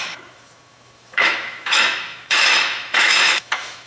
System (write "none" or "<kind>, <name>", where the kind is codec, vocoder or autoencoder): autoencoder, DAC-VAE